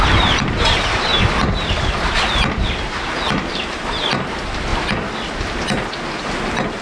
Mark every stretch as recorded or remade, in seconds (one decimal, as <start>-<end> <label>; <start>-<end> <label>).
0.0-1.1 remade; 1.1-3.5 recorded; 3.5-4.7 remade; 4.7-6.3 recorded; 6.3-6.8 remade